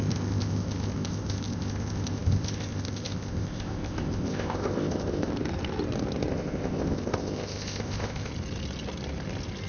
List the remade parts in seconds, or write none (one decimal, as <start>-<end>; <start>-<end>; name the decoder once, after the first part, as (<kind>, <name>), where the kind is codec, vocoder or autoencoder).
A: 0.0-5.3 (codec, ZipCodec); 6.3-8.3